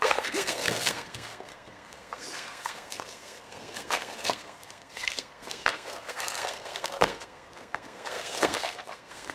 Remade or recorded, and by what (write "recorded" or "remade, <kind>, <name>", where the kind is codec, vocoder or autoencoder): remade, codec, SNAC